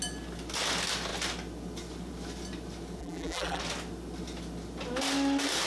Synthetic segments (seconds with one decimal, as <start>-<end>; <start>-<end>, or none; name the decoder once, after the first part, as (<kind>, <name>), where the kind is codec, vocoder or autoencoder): 3.0-3.6 (vocoder, BigVGAN v2)